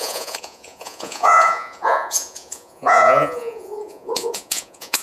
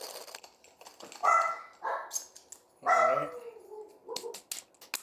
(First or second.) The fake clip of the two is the first